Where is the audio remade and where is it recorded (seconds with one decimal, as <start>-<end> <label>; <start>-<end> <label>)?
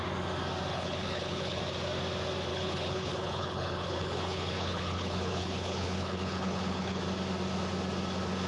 0.0-0.7 recorded; 0.7-1.6 remade; 1.6-2.5 recorded; 2.5-7.0 remade; 7.0-8.5 recorded